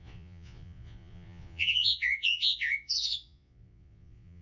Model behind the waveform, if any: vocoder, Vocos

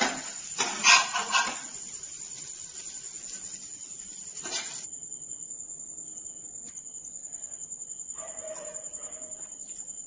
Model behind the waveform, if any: none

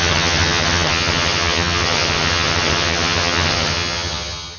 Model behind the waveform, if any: vocoder, HiFi-GAN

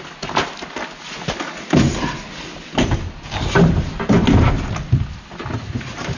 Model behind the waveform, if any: none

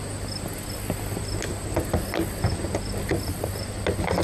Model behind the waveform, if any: none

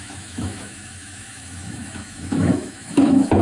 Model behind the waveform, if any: autoencoder, DAC-VAE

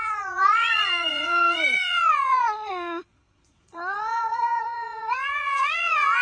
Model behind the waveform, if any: vocoder, Vocos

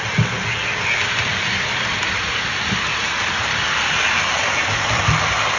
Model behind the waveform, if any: none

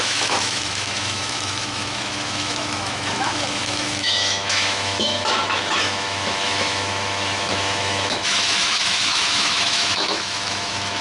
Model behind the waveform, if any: autoencoder, DAC-VAE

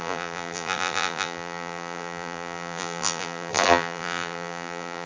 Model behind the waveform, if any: vocoder, BigVGAN v2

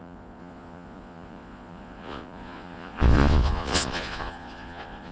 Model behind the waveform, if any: vocoder, Vocos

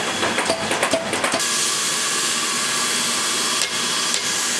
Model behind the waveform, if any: none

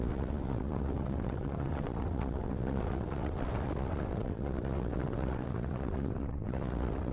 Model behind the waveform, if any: vocoder, WaveNeXt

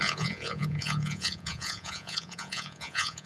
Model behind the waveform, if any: vocoder, Vocos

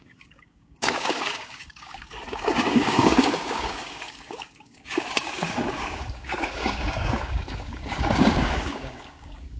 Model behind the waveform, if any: codec, DAC